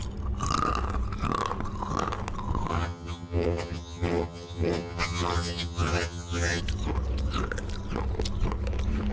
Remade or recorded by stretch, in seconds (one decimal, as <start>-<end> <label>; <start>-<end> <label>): 0.0-2.7 recorded; 2.7-6.6 remade; 6.6-9.1 recorded